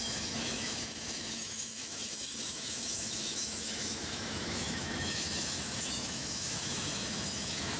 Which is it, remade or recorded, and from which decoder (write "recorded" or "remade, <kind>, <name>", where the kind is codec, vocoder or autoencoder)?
remade, autoencoder, DAC-VAE